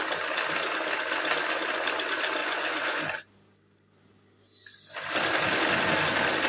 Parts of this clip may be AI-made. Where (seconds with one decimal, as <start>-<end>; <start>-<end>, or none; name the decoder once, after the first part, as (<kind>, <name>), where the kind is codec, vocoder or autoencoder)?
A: 2.4-3.0 (vocoder, Vocos)